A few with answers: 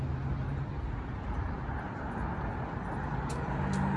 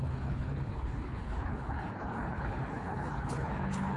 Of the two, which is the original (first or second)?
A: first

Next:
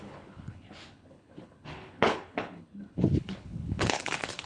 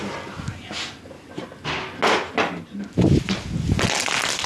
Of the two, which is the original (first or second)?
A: second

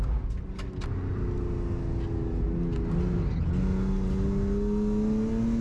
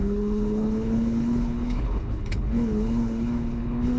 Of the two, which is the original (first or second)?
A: first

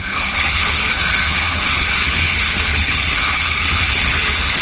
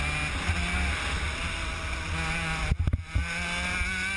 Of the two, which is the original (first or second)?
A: second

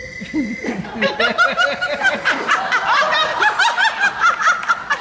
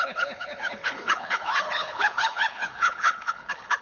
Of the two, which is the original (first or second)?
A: first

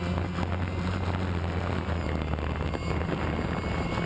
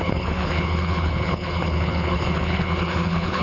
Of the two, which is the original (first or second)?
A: first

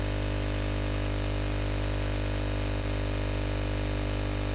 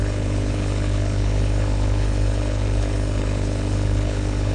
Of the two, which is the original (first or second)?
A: first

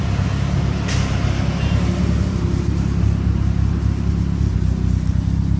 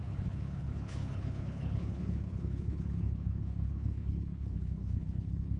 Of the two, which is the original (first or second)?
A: first